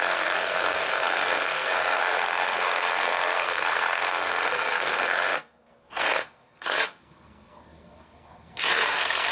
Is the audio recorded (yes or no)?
no